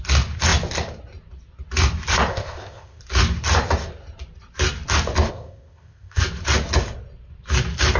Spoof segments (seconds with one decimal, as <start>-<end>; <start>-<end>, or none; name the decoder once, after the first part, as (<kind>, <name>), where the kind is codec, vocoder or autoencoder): 2.3-3.0 (codec, ZipCodec); 5.3-6.2

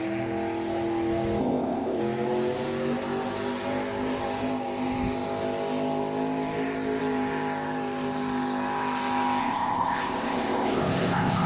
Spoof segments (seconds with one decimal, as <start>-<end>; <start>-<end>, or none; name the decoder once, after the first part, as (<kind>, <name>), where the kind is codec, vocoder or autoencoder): 1.4-2.0 (codec, ZipCodec); 9.4-11.5

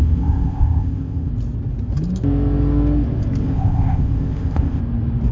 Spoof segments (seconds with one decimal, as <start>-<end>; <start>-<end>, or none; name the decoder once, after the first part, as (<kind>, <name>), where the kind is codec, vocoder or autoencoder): 0.0-1.3 (codec, ZipCodec); 3.4-4.8

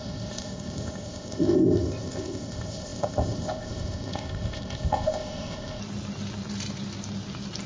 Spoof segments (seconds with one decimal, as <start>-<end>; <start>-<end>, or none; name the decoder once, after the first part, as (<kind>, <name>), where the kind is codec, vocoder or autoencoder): 0.0-5.8 (codec, ZipCodec)

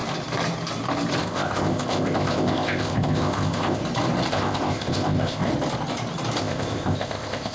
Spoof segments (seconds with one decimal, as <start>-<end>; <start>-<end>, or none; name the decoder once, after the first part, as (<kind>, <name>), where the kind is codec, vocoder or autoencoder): 1.2-3.8 (codec, ZipCodec); 4.3-5.5; 6.4-7.5